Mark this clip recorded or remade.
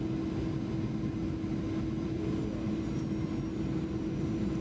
recorded